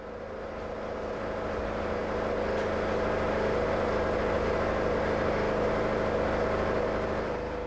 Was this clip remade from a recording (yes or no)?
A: no